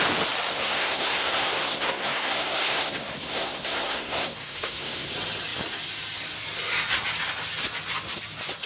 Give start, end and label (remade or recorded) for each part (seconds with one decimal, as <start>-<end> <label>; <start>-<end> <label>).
0.0-0.6 recorded; 0.6-5.1 remade; 5.1-8.7 recorded